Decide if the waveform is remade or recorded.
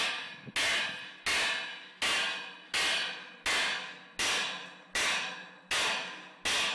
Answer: recorded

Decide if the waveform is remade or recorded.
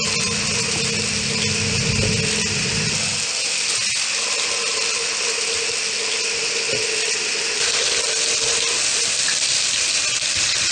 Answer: recorded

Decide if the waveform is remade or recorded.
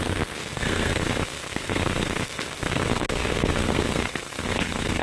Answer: remade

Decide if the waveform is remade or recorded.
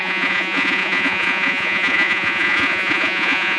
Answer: remade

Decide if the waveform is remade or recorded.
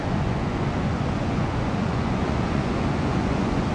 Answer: remade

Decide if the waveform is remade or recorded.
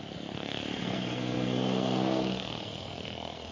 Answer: remade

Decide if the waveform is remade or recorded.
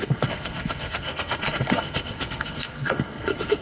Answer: remade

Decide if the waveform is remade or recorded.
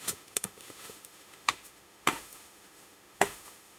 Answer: remade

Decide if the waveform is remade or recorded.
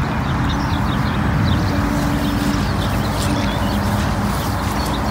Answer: recorded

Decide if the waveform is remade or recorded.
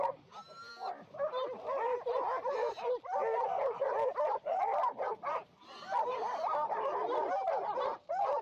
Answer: recorded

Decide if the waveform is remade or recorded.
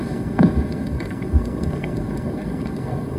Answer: remade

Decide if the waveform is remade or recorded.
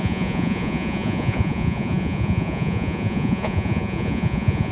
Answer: remade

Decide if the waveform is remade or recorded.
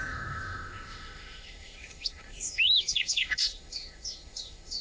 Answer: remade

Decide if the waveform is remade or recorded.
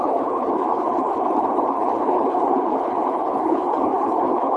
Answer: remade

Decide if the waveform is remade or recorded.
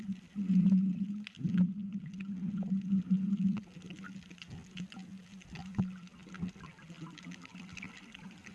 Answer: recorded